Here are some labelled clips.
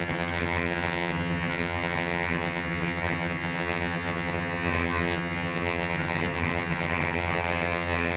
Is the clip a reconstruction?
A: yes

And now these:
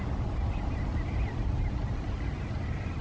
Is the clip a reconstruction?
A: no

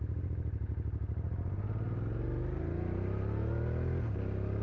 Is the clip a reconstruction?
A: no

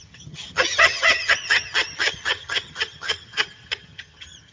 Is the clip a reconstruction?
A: yes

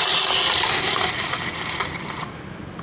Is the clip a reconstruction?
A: no